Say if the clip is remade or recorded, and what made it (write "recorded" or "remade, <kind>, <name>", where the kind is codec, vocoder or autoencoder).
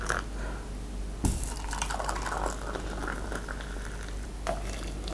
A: recorded